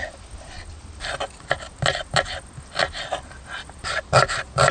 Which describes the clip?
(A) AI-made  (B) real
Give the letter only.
B